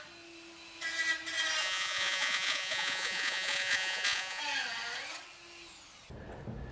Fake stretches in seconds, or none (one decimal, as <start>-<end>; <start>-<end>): 1.6-4.4